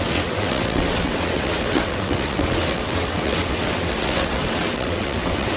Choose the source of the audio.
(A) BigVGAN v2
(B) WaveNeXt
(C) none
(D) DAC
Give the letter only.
B